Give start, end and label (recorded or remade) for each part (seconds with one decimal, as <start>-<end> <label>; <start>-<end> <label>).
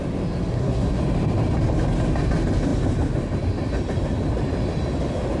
0.0-0.5 recorded; 0.5-1.0 remade; 1.0-5.4 recorded